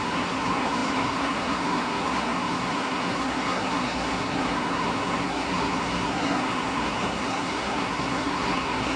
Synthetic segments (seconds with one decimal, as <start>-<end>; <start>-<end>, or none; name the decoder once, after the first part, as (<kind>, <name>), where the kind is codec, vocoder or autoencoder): 0.0-9.0 (codec, SNAC)